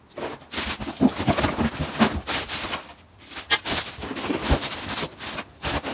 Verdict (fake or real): real